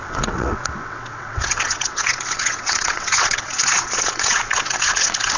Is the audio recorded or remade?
remade